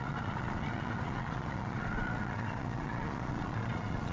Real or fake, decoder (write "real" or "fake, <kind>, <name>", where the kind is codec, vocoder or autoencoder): fake, vocoder, Vocos